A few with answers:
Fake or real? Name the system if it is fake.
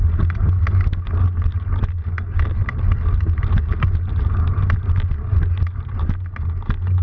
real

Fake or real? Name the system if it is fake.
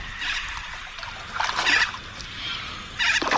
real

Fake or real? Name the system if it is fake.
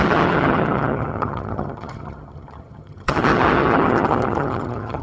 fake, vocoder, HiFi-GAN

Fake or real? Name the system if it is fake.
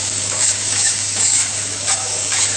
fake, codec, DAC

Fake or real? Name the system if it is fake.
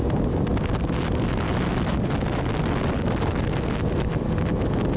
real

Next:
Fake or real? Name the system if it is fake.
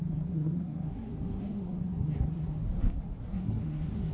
fake, codec, SNAC